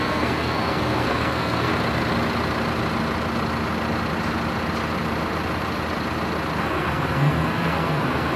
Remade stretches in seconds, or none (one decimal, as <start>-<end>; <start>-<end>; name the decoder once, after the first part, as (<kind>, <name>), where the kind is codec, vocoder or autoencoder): 0.0-1.7 (codec, SNAC); 6.6-8.4